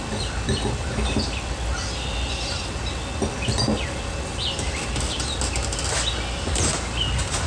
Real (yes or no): yes